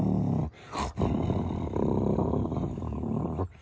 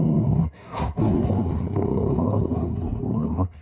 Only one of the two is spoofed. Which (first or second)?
second